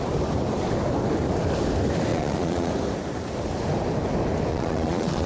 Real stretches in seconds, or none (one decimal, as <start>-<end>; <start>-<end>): 0.0-2.1; 2.7-4.5